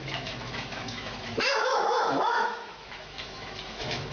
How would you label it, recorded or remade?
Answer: remade